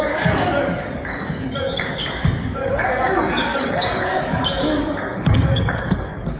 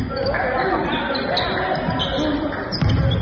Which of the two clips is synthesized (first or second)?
first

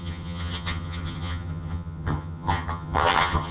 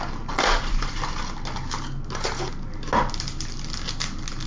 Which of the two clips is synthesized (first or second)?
first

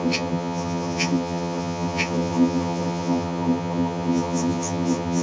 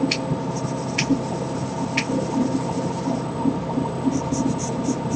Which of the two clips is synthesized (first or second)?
first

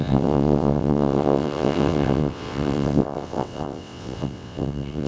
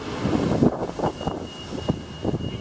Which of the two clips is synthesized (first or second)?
first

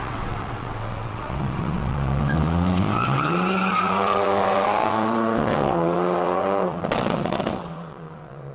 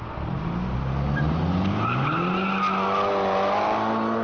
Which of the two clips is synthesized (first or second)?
first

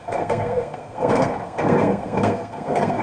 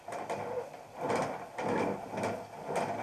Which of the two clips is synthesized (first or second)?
first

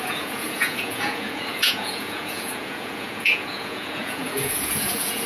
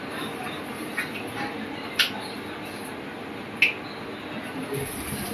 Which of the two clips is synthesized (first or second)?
first